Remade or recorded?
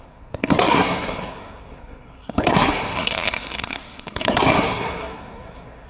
remade